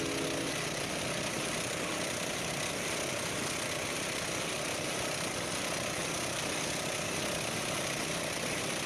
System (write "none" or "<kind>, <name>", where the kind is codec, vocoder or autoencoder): none